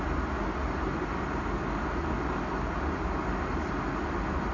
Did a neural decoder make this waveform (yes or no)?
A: no